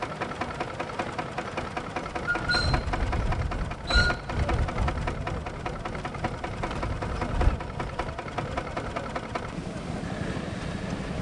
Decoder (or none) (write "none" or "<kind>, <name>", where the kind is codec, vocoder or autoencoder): none